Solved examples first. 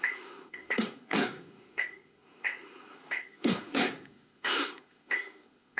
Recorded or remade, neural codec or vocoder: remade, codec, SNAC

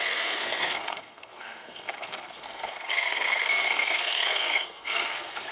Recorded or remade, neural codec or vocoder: remade, codec, SNAC